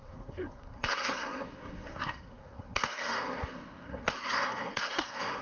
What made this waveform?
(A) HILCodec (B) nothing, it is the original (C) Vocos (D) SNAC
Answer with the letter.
D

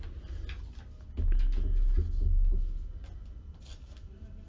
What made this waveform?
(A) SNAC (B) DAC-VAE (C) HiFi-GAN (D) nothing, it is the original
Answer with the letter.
D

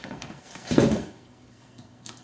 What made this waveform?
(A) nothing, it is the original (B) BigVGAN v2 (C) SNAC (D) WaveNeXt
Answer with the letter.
C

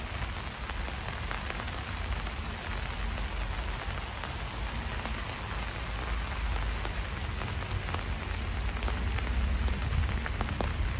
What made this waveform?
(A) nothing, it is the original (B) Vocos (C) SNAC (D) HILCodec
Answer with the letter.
A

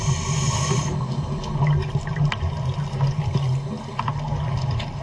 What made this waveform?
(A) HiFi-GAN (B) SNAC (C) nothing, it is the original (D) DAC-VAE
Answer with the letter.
C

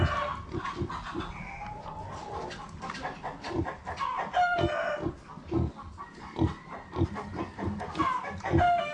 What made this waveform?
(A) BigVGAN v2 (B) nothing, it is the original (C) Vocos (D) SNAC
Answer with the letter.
B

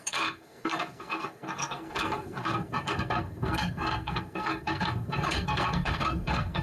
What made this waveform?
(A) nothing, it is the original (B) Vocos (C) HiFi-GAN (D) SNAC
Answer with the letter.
D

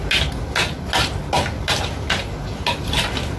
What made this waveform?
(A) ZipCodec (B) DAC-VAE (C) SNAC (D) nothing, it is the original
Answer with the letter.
D